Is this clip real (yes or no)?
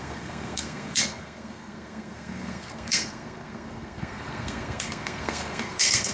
no